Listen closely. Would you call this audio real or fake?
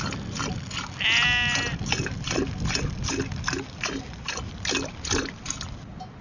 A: real